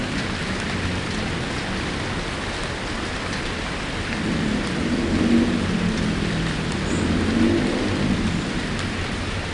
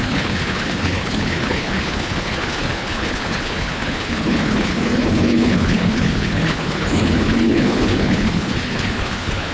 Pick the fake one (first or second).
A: second